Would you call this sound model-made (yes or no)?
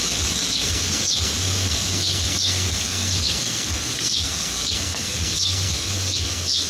yes